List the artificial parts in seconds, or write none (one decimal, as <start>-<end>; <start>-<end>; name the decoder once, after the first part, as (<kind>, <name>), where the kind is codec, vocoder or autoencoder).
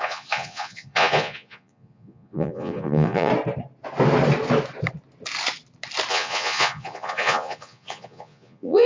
0.0-3.3 (vocoder, Vocos); 6.1-8.9